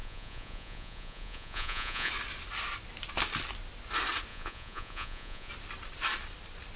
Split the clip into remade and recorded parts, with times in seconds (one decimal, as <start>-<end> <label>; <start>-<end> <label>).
0.0-2.1 remade; 2.1-4.3 recorded; 4.3-5.5 remade; 5.5-6.8 recorded